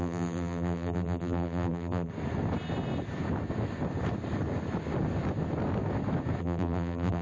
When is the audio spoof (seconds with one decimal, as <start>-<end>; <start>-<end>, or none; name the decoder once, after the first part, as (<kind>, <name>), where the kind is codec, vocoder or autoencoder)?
0.0-2.1 (vocoder, BigVGAN v2); 6.4-7.2